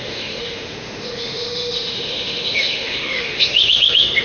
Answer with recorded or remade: remade